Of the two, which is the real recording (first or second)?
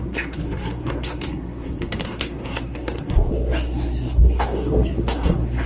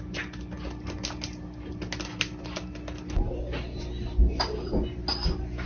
second